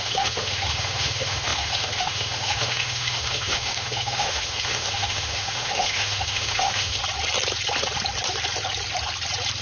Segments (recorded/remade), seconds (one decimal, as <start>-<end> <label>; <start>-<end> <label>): 0.0-7.0 remade; 7.0-9.6 recorded